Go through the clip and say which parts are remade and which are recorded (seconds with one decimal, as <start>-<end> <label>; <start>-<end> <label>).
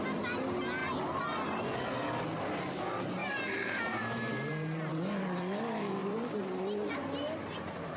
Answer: 0.0-0.8 recorded; 0.8-1.6 remade; 1.6-3.2 recorded; 3.2-4.9 remade; 4.9-6.0 recorded; 6.0-8.0 remade